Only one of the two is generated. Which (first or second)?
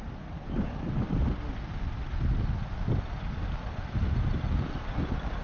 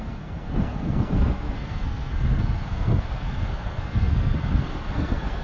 second